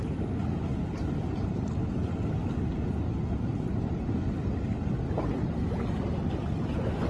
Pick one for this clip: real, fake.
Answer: real